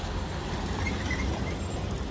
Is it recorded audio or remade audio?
recorded